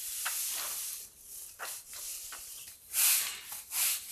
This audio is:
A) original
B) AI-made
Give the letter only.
A